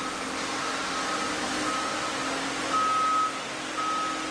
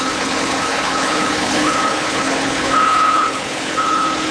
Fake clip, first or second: second